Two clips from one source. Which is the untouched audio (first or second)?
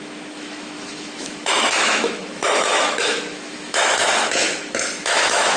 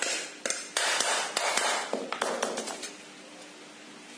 second